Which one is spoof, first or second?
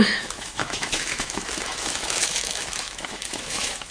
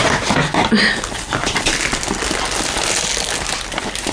first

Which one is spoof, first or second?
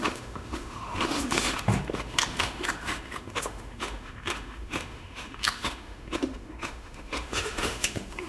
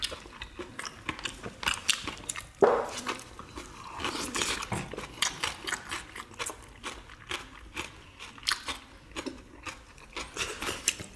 first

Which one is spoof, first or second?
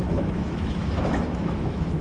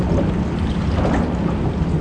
first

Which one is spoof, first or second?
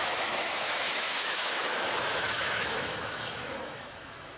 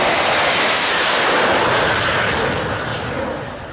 first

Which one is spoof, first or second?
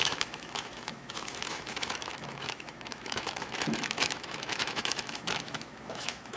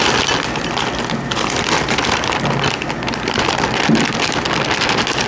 first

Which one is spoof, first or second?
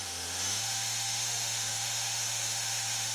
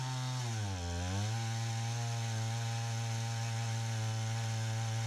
first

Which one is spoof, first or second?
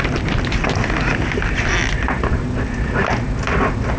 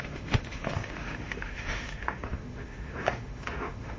second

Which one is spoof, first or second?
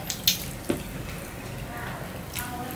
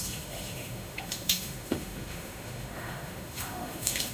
second